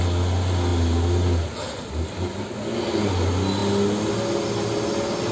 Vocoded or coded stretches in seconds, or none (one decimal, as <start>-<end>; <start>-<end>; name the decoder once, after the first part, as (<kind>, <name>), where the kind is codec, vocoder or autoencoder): none